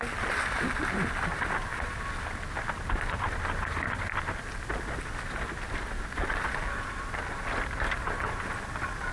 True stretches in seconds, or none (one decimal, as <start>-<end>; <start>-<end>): 0.0-9.1